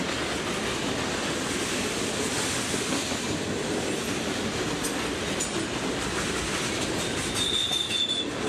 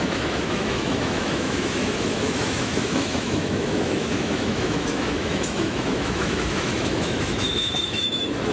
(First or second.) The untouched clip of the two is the first